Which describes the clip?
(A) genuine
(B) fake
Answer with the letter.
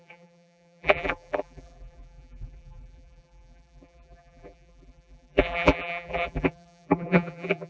B